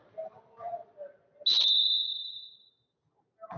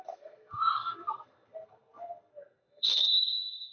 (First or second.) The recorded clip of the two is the first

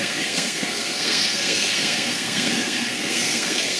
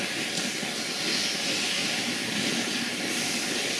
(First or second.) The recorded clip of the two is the second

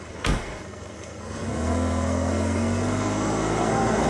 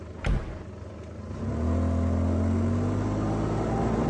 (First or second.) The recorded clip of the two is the second